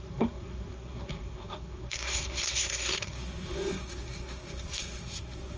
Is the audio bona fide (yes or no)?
no